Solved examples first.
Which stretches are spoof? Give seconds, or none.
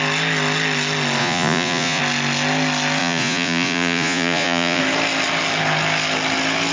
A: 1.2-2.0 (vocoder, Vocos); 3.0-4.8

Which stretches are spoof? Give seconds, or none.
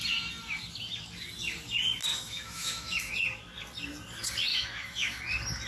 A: 2.1-3.1 (autoencoder, DAC-VAE); 4.5-5.2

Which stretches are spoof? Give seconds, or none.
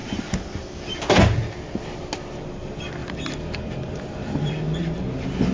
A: 0.0-2.0 (vocoder, BigVGAN v2); 3.0-4.8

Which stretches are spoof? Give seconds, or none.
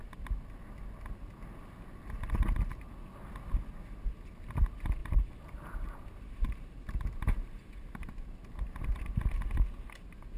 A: 5.0-9.1 (vocoder, BigVGAN v2)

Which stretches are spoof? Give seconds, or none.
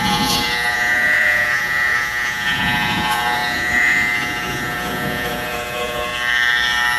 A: 0.0-6.1 (vocoder, Vocos)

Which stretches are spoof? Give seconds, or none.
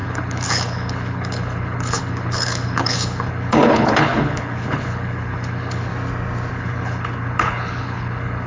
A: 0.0-5.9 (codec, HILCodec); 6.5-8.5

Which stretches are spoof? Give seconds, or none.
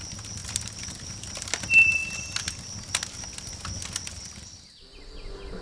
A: none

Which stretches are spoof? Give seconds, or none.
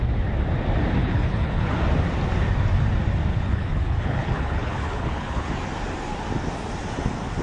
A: 1.0-1.8 (codec, HILCodec); 3.3-5.5